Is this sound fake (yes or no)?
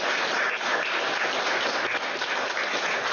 no